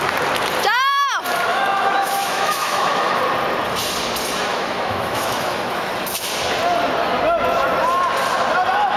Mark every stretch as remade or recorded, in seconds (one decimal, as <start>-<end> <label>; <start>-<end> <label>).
0.0-1.5 recorded; 1.5-3.2 remade; 3.2-4.5 recorded; 4.5-5.9 remade; 5.9-9.0 recorded